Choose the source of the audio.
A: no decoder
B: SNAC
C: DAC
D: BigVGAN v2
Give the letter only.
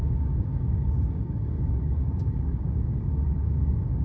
C